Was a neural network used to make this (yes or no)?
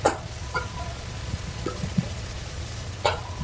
yes